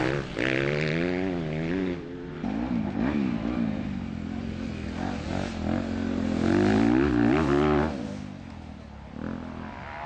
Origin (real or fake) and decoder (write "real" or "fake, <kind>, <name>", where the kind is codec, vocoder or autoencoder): real